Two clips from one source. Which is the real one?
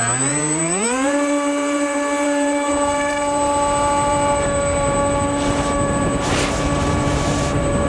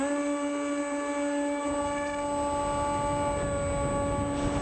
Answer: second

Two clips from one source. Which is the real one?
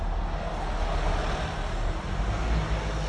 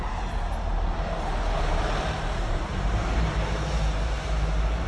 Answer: first